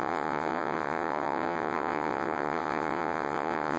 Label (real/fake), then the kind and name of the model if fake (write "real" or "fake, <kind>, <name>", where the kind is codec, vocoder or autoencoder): fake, vocoder, WaveNeXt